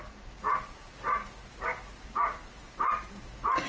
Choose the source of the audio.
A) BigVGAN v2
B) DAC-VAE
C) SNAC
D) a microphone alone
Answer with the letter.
D